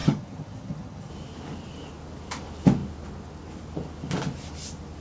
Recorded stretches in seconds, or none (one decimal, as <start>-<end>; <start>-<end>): 1.1-5.0